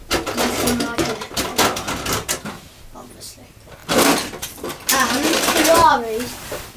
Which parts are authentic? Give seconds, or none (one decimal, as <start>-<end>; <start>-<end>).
0.0-3.8; 5.4-6.8